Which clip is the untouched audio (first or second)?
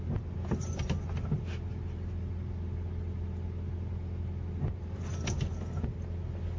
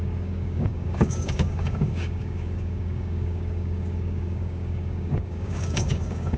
first